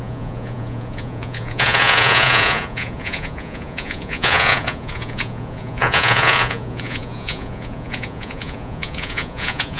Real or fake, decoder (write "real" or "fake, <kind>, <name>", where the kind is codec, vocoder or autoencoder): fake, vocoder, Vocos